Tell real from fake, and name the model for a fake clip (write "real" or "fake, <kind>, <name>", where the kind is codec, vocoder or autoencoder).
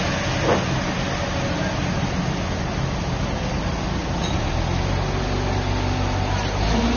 real